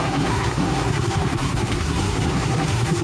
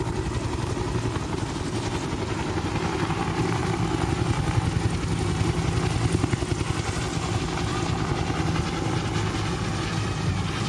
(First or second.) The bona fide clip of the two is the second